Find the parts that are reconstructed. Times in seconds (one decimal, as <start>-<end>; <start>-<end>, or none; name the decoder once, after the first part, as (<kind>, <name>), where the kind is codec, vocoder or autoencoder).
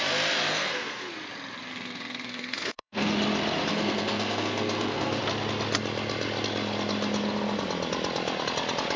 0.5-1.1 (codec, SNAC); 1.7-3.1; 3.7-5.2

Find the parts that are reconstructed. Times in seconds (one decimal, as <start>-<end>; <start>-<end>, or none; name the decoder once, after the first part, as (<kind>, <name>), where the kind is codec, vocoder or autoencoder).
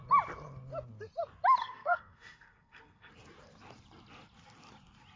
1.6-3.1 (codec, SNAC)